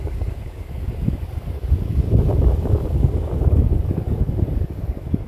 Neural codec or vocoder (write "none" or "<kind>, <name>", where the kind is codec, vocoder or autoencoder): codec, DAC